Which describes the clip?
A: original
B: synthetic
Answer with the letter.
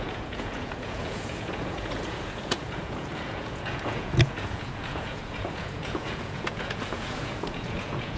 B